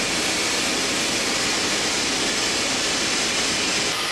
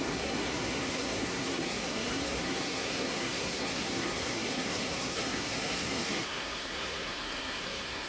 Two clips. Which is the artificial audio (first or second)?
second